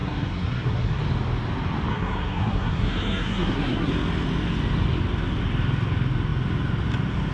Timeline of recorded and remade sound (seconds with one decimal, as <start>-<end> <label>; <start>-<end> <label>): 0.0-1.0 remade; 1.0-1.9 recorded; 1.9-3.9 remade; 3.9-7.3 recorded